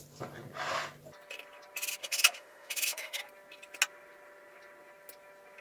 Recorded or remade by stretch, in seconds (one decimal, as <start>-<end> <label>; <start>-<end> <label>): 0.0-2.0 recorded; 2.0-3.2 remade; 3.2-5.6 recorded